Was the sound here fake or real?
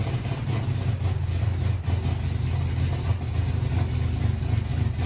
real